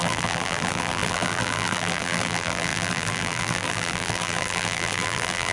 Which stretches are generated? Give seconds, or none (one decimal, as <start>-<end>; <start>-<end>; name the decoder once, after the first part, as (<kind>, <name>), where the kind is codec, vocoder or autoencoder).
0.0-5.5 (vocoder, BigVGAN v2)